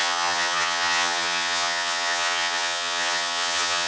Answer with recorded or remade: remade